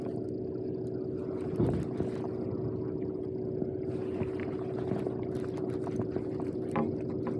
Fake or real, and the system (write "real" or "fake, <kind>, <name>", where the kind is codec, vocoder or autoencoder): real